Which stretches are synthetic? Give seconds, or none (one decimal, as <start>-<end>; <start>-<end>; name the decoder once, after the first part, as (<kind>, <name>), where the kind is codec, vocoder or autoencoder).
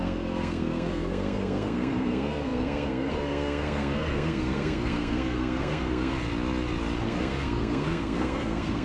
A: 0.0-6.1 (codec, SNAC); 7.0-8.8